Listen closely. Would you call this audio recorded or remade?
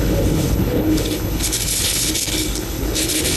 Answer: remade